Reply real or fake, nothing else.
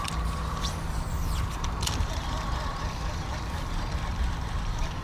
fake